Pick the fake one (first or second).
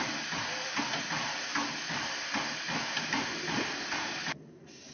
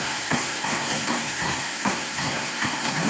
second